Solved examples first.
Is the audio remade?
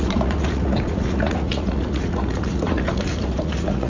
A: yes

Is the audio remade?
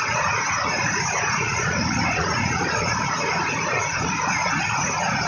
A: yes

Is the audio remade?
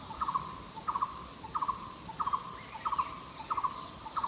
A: no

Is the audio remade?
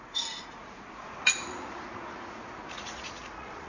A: yes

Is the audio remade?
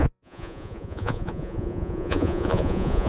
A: yes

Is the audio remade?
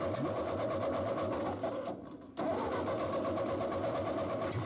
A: no